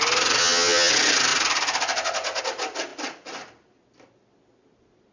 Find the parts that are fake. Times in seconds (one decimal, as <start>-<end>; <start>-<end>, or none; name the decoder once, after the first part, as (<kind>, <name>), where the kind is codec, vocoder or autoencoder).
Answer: 0.4-0.9 (vocoder, HiFi-GAN)